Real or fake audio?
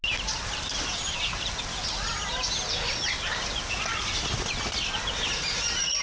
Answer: real